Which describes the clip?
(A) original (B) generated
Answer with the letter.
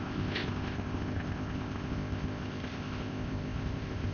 B